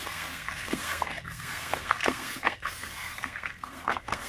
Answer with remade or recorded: remade